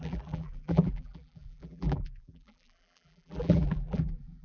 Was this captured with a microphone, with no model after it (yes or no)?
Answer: no